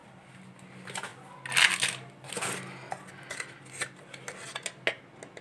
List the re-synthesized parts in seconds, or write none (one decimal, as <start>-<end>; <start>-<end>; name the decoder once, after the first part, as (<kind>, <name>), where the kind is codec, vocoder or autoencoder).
none

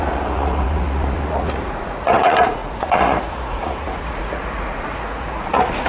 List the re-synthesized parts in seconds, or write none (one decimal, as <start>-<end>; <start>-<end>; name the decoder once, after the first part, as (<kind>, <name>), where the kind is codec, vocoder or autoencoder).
0.0-5.9 (vocoder, Vocos)

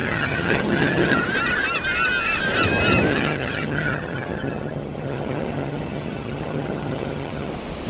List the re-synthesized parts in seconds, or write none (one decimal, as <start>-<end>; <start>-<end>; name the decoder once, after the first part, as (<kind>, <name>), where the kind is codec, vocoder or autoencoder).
0.0-1.2 (vocoder, HiFi-GAN); 3.1-7.5

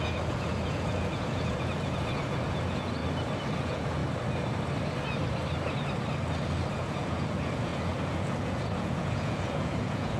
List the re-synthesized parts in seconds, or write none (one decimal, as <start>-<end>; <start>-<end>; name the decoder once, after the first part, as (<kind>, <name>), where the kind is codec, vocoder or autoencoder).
0.0-3.0 (vocoder, Vocos); 3.6-4.0; 6.7-10.2